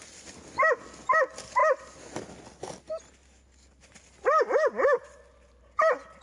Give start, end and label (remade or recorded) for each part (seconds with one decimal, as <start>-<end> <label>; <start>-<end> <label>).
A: 0.0-6.2 recorded